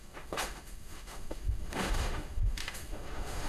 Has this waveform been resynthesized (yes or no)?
yes